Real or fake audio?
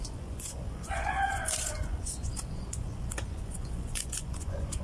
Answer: fake